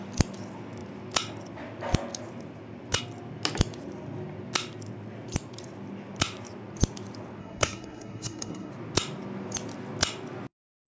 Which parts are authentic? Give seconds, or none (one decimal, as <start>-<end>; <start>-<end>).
0.0-7.4; 8.7-10.9